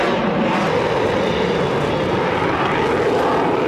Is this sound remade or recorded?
recorded